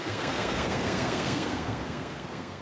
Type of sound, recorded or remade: remade